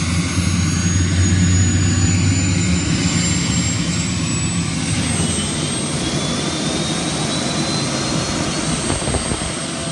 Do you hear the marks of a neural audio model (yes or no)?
no